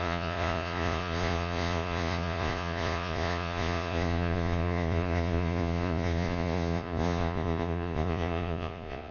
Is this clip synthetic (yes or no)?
yes